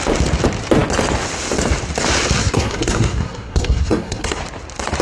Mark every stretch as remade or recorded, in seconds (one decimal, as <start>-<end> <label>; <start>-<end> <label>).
0.0-2.4 recorded; 2.4-4.4 remade; 4.4-5.0 recorded